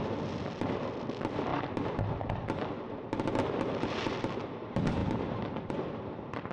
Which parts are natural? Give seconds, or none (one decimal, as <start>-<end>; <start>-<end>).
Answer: 0.0-5.0; 5.7-6.5

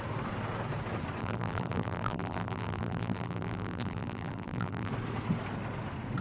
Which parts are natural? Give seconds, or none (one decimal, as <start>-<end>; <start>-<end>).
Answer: 0.0-1.2; 4.9-6.2

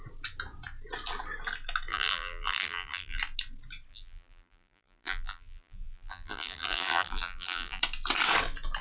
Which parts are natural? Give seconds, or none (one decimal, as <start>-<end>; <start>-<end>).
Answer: 0.0-1.9; 3.2-3.9; 7.8-8.8

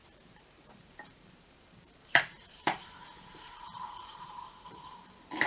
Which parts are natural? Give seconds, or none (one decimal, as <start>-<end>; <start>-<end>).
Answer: 2.8-3.3